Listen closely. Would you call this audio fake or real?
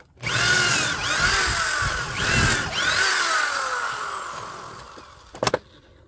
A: real